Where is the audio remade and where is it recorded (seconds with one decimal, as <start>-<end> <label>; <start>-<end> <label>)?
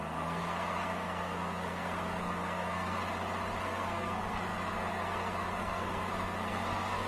0.0-3.0 remade; 3.0-3.6 recorded; 3.6-7.1 remade